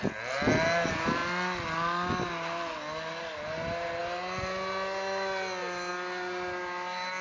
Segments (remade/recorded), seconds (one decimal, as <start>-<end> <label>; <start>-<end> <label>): 0.0-7.2 recorded